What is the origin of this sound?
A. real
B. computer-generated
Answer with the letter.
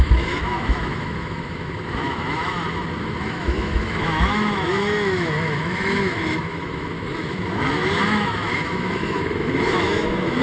B